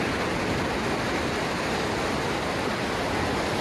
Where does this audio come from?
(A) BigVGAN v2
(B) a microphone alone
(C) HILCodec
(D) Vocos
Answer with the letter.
A